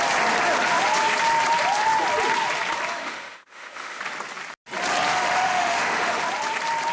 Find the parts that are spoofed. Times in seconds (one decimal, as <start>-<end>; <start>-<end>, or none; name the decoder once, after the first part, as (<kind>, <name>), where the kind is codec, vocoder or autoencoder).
2.9-4.0 (autoencoder, DAC-VAE); 5.1-6.2